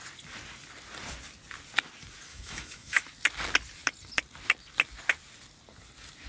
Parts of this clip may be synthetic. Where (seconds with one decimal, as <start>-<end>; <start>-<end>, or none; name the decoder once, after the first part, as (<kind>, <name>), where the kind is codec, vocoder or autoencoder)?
2.3-3.0 (autoencoder, DAC-VAE)